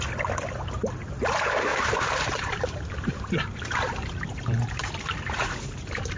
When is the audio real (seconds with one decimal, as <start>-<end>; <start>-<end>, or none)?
0.0-1.7; 4.9-6.2